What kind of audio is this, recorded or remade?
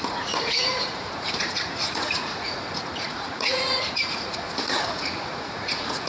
remade